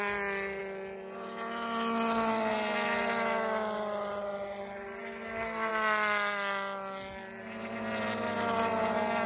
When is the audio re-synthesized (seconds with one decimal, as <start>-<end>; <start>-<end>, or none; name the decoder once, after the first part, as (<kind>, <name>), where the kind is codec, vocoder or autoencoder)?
none